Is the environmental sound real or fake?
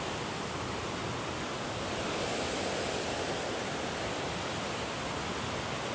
real